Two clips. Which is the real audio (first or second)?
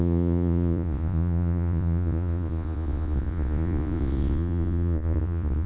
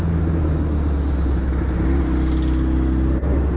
second